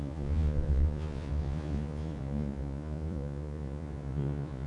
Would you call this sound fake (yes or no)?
yes